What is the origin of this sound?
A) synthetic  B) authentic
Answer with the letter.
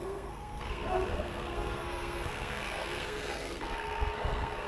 A